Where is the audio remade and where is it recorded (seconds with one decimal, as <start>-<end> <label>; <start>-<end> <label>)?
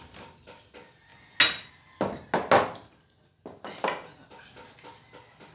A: 0.0-5.5 recorded